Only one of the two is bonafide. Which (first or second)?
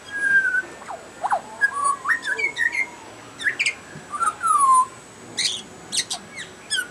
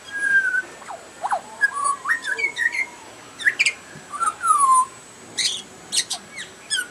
first